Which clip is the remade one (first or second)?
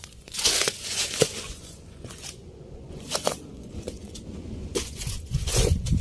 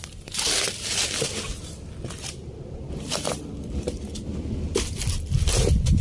first